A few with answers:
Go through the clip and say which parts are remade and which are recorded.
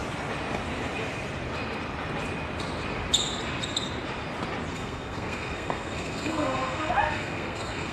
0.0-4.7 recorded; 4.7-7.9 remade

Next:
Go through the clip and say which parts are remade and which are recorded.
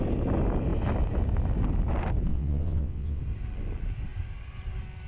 0.0-2.3 recorded; 2.3-3.2 remade; 3.2-5.1 recorded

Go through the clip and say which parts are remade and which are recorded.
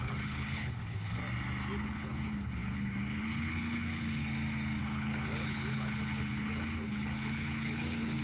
0.0-1.2 remade; 1.2-1.8 recorded; 1.8-4.2 remade; 4.2-4.8 recorded; 4.8-8.2 remade